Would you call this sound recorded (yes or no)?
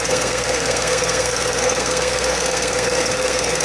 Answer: no